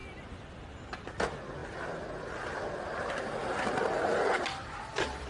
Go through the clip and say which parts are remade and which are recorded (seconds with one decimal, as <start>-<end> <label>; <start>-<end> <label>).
0.0-5.3 recorded